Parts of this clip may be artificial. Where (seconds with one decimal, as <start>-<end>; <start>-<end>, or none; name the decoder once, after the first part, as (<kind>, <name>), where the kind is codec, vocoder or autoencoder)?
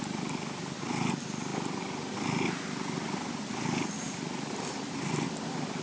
none